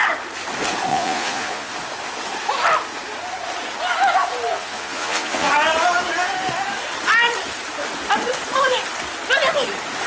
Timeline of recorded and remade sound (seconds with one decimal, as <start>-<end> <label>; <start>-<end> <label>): 0.0-0.9 recorded; 0.9-1.7 remade; 1.7-4.5 recorded; 4.5-5.5 remade; 5.5-10.1 recorded

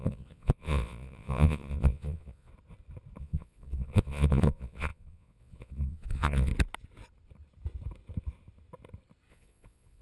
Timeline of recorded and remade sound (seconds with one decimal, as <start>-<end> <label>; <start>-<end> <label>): 0.0-2.5 remade; 2.5-3.2 recorded; 3.2-6.5 remade; 6.5-9.3 recorded; 9.3-10.0 remade